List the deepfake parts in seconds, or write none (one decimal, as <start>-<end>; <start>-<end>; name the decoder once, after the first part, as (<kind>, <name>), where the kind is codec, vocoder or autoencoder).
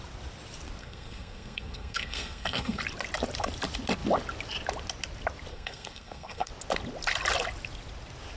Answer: 0.8-2.8 (codec, SNAC); 5.5-6.5